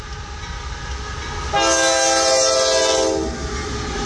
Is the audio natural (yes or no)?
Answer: yes